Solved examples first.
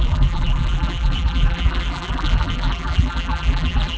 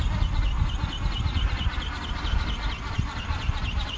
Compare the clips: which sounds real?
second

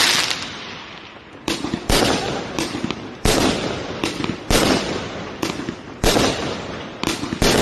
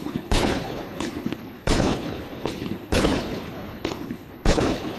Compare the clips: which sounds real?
first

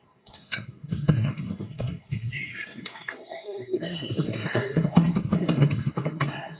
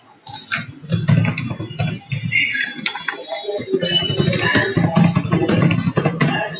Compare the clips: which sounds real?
second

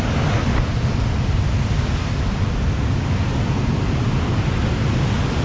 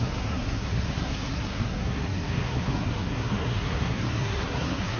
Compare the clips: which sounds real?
first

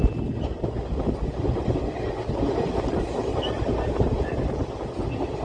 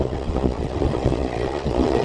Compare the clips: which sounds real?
first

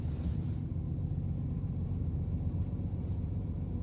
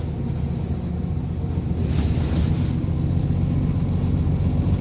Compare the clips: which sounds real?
second